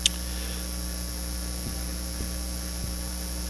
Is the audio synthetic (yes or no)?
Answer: no